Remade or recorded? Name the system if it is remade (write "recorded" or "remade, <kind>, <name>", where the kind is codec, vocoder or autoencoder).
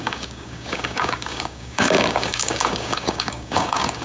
remade, codec, DAC